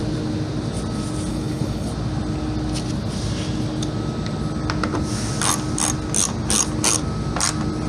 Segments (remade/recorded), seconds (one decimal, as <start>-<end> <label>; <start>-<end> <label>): 0.0-1.3 recorded; 1.3-1.9 remade; 1.9-7.9 recorded